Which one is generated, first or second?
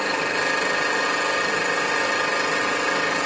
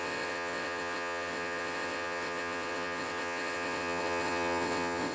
second